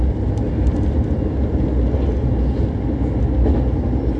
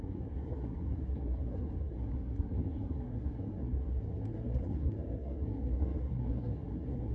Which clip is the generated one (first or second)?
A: second